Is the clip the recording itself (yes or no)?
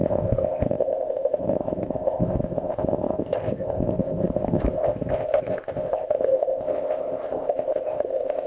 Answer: no